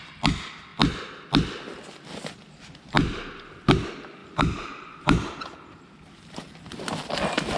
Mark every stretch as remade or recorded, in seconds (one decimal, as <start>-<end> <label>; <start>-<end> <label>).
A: 0.0-4.2 recorded; 4.2-6.6 remade; 6.6-7.6 recorded